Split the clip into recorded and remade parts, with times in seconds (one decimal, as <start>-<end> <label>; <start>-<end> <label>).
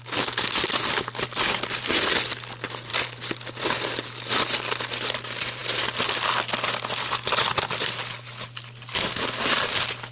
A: 0.0-10.1 recorded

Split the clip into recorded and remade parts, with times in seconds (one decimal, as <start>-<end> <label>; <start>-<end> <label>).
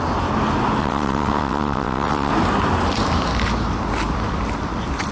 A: 0.0-0.8 recorded; 0.8-2.3 remade; 2.3-5.1 recorded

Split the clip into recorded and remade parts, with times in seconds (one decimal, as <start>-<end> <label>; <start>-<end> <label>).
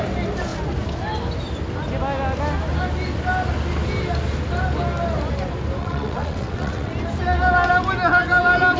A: 0.0-5.8 recorded; 5.8-6.9 remade; 6.9-8.8 recorded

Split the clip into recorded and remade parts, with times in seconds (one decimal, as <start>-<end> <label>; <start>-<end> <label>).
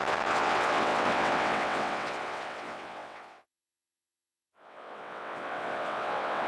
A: 0.0-6.5 remade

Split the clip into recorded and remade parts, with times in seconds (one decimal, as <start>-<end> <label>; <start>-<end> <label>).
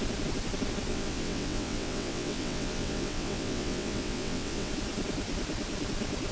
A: 0.0-0.9 recorded; 0.9-4.7 remade; 4.7-6.3 recorded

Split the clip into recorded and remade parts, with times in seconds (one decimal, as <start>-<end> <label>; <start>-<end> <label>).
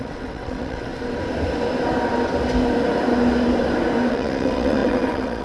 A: 0.0-0.9 remade; 0.9-4.1 recorded; 4.1-5.4 remade